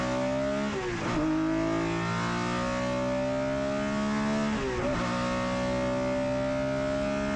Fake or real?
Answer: real